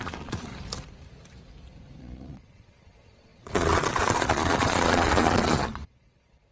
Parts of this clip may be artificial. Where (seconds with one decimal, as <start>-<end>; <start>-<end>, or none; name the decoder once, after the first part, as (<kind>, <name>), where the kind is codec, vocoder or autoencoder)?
0.0-0.5 (vocoder, Vocos); 2.0-6.5